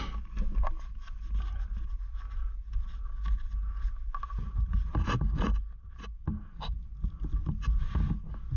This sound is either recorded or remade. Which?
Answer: recorded